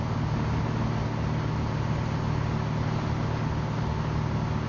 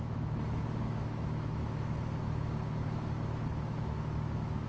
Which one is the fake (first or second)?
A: second